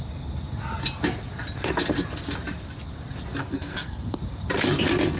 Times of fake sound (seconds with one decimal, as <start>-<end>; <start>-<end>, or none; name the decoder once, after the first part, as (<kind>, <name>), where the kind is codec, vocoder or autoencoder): 3.4-4.2 (codec, SNAC)